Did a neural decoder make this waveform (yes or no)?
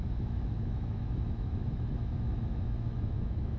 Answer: yes